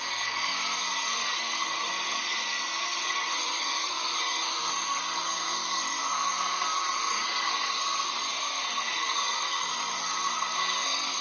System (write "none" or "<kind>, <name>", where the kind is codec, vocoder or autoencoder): codec, SNAC